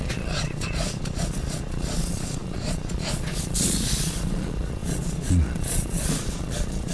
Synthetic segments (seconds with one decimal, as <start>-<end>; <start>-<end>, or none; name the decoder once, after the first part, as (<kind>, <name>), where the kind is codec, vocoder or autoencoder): 0.0-6.9 (vocoder, Vocos)